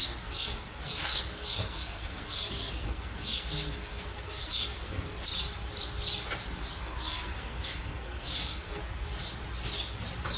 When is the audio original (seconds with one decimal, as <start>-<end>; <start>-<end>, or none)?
5.3-6.8; 8.8-10.4